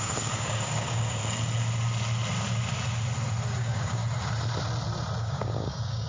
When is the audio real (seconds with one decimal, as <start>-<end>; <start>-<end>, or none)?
1.2-3.6; 4.0-5.2